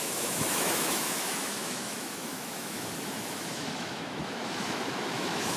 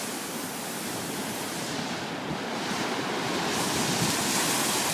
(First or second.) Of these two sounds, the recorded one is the second